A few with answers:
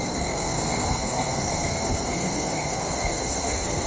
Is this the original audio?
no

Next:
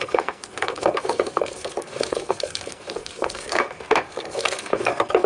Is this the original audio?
no